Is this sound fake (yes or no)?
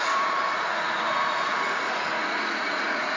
yes